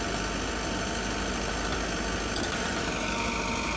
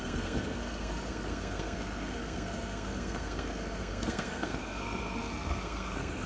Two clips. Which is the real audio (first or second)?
first